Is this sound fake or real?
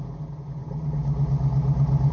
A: real